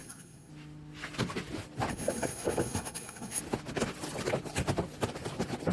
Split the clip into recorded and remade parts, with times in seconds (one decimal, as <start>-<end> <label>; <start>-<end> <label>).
0.0-0.5 remade; 0.5-1.9 recorded; 1.9-3.4 remade; 3.4-5.7 recorded